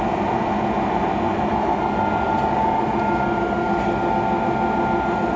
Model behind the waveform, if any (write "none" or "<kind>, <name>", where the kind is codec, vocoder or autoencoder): none